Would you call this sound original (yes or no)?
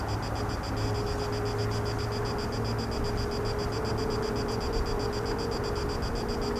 yes